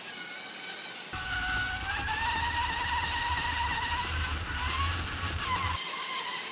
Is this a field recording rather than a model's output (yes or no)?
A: yes